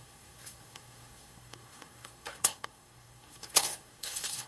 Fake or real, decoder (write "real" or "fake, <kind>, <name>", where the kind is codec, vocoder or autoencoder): fake, codec, SNAC